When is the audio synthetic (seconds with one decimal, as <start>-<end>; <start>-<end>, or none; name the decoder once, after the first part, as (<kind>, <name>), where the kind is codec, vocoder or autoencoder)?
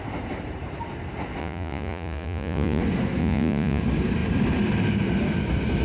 1.4-2.8 (vocoder, Vocos); 3.2-3.8